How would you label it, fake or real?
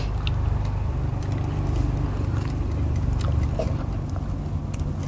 real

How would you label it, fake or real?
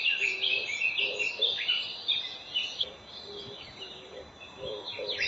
real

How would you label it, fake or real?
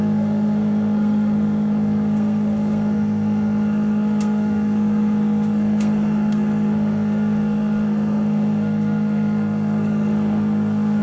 fake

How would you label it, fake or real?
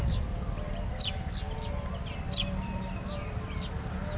real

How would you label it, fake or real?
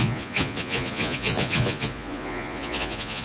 fake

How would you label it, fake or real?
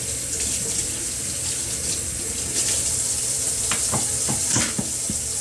fake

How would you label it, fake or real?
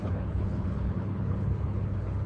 fake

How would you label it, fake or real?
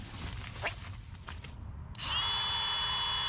real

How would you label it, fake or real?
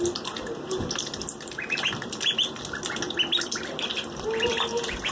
real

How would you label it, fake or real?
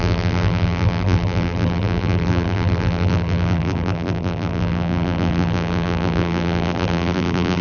fake